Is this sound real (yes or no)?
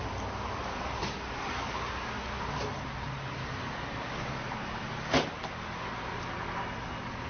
yes